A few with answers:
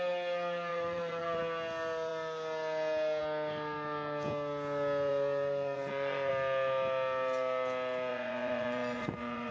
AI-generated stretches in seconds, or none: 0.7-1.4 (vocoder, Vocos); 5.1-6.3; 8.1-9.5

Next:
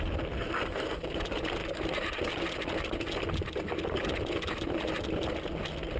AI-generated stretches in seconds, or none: none

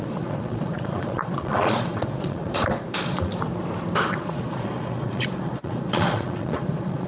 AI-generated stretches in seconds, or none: 0.0-3.3 (vocoder, Vocos); 4.1-7.1